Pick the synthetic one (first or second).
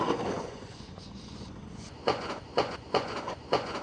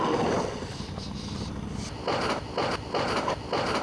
first